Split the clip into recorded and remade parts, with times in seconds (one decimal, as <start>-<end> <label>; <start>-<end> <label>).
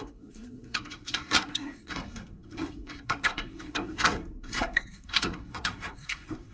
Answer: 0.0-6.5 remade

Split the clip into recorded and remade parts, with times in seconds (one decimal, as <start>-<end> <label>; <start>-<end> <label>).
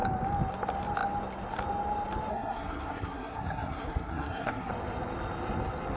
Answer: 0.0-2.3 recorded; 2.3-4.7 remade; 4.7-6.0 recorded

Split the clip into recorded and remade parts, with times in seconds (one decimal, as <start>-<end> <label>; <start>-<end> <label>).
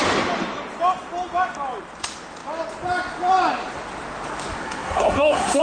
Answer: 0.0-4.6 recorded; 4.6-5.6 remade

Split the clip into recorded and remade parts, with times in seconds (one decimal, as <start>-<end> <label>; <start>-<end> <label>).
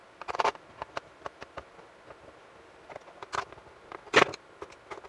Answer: 0.0-5.1 recorded